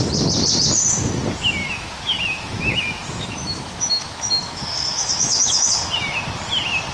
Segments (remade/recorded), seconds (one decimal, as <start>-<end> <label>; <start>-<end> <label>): 0.0-1.6 recorded; 1.6-5.7 remade; 5.7-6.9 recorded

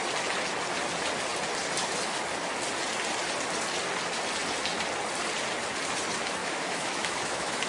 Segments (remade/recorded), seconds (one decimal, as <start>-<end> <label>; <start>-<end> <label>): 0.0-6.4 recorded; 6.4-7.7 remade

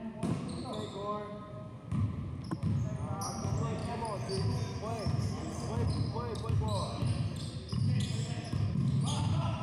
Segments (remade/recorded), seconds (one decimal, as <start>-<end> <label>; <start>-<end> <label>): 0.0-9.6 recorded

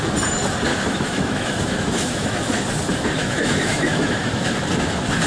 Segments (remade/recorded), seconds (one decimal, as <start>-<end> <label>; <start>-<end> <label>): 0.0-0.7 recorded; 0.7-2.4 remade; 2.4-3.2 recorded; 3.2-4.6 remade; 4.6-5.3 recorded

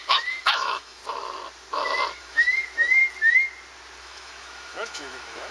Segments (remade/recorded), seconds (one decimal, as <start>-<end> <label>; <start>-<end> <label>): 0.0-1.0 remade; 1.0-2.2 recorded; 2.2-3.0 remade; 3.0-4.0 recorded; 4.0-5.5 remade

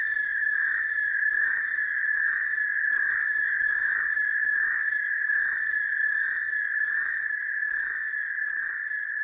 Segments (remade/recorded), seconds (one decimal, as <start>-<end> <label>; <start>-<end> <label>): 0.0-1.7 remade; 1.7-3.0 recorded; 3.0-5.2 remade; 5.2-6.7 recorded; 6.7-7.6 remade; 7.6-9.2 recorded

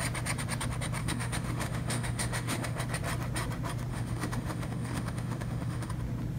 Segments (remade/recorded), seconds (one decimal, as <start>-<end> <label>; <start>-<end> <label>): 0.0-1.0 recorded; 1.0-2.8 remade; 2.8-3.9 recorded; 3.9-5.9 remade; 5.9-6.4 recorded

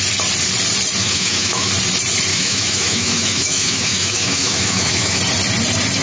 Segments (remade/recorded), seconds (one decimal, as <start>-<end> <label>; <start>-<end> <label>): 0.0-1.0 recorded; 1.0-1.7 remade; 1.7-2.3 recorded; 2.3-5.2 remade; 5.2-6.0 recorded